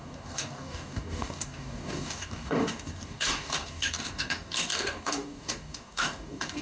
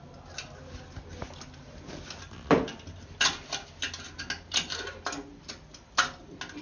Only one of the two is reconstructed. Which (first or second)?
first